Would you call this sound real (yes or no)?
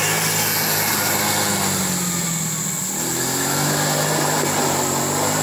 yes